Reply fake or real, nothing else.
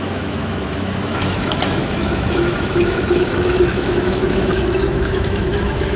fake